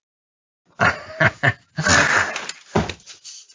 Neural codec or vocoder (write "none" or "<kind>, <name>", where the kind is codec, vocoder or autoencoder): none